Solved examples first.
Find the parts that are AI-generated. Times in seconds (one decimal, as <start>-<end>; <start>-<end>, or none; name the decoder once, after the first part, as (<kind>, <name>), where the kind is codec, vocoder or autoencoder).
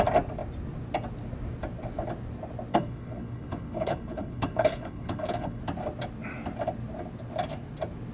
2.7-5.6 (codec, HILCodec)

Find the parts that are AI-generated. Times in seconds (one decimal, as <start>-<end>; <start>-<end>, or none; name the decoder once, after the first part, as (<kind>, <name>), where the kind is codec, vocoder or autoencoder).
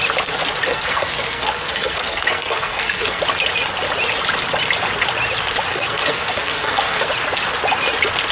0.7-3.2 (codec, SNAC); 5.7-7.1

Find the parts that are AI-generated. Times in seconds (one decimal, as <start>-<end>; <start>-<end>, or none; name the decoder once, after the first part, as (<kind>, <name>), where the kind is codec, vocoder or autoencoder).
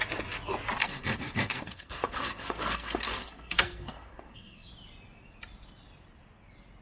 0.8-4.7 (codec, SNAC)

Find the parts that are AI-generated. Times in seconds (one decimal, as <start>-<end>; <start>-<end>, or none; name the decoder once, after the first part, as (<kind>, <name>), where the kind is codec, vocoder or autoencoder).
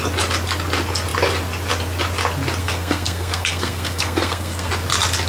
2.6-4.7 (codec, SNAC)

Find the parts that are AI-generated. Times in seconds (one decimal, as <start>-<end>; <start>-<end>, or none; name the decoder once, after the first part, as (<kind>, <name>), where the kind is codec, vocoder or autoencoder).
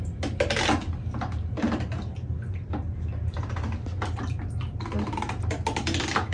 none